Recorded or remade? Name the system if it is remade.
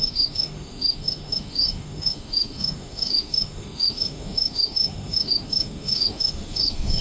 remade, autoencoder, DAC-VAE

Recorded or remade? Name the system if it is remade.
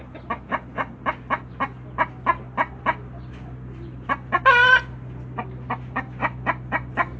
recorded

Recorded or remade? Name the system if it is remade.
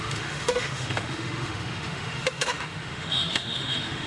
remade, autoencoder, DAC-VAE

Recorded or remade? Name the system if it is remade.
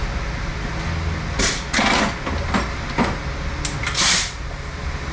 recorded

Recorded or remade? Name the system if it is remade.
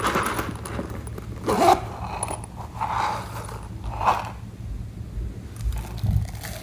recorded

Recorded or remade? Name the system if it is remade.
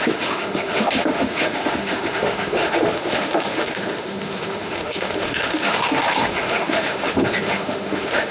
remade, autoencoder, DAC-VAE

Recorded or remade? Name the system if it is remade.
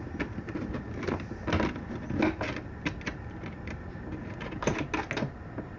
recorded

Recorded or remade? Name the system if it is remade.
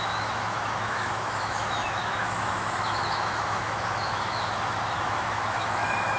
remade, autoencoder, DAC-VAE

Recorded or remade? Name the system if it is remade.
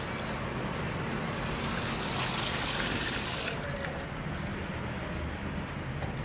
recorded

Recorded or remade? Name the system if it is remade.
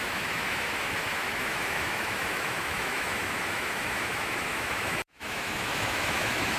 remade, autoencoder, DAC-VAE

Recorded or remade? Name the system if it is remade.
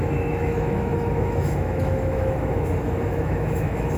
remade, autoencoder, DAC-VAE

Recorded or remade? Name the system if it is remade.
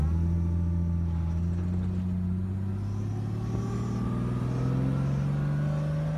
recorded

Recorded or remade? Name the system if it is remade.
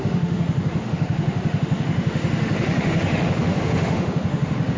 remade, autoencoder, DAC-VAE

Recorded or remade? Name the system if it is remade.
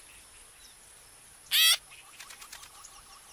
recorded